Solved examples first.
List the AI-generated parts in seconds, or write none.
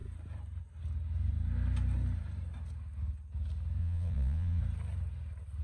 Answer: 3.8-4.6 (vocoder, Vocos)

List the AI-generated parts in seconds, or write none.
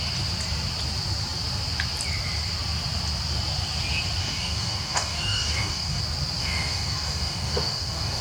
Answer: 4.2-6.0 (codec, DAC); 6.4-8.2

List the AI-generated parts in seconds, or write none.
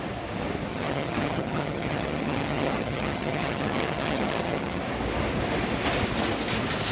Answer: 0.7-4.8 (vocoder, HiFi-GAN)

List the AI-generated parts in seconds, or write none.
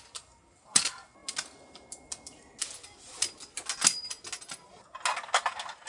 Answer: none